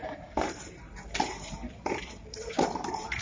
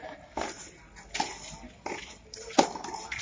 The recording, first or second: second